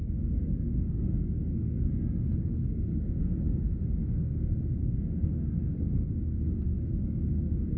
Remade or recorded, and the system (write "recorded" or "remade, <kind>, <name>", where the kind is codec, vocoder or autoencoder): remade, codec, SNAC